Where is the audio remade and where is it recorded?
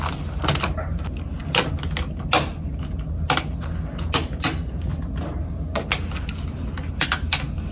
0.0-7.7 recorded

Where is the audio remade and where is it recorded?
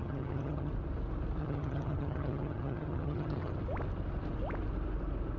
0.0-0.7 remade; 0.7-1.4 recorded; 1.4-3.5 remade; 3.5-5.4 recorded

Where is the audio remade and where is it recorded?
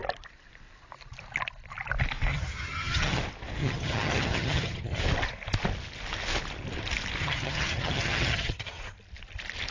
0.0-2.3 recorded; 2.3-3.2 remade; 3.2-3.6 recorded; 3.6-5.0 remade; 5.0-7.2 recorded; 7.2-8.8 remade; 8.8-9.7 recorded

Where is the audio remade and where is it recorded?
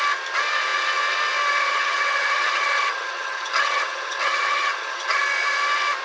0.0-1.6 recorded; 1.6-5.2 remade; 5.2-6.0 recorded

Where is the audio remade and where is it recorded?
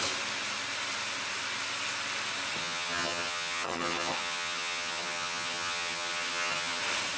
0.0-2.6 recorded; 2.6-6.8 remade; 6.8-7.2 recorded